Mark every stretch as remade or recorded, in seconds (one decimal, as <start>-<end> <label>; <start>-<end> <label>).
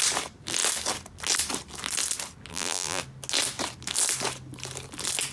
0.0-2.5 recorded; 2.5-3.0 remade; 3.0-5.3 recorded